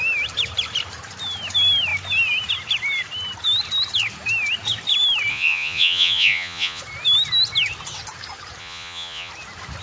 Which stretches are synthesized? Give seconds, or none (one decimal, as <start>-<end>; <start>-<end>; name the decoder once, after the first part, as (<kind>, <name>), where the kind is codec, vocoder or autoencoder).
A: 5.3-6.8 (vocoder, Vocos); 8.6-9.3